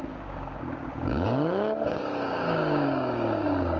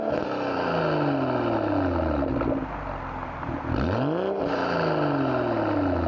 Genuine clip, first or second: second